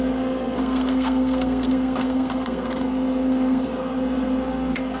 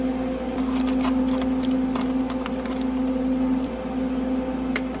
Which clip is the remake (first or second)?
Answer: first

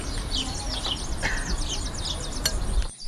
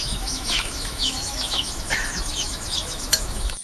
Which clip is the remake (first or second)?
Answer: second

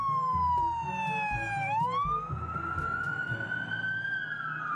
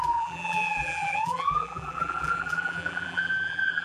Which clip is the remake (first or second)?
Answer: second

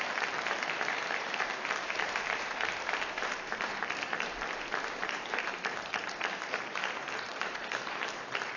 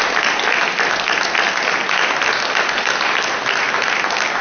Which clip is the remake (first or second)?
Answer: first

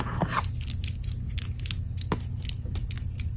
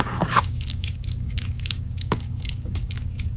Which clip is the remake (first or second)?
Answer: second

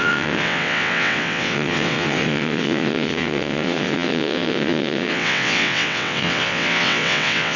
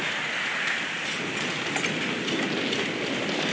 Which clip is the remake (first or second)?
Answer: first